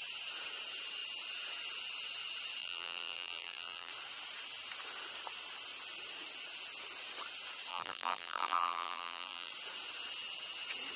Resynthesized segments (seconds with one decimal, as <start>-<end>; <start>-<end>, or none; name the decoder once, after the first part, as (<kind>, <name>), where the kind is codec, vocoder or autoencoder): 2.6-3.9 (vocoder, BigVGAN v2); 7.7-9.5